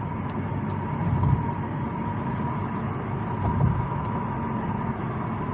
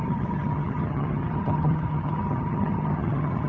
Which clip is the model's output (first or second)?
second